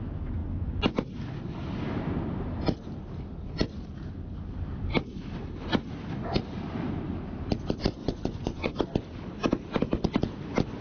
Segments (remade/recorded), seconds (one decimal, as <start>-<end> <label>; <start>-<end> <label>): 0.0-8.0 recorded; 8.0-8.8 remade; 8.8-10.8 recorded